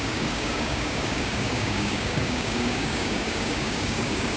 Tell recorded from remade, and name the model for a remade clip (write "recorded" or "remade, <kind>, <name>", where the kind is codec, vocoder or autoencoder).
remade, codec, DAC